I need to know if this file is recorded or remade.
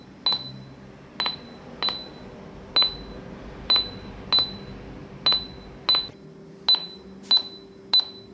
recorded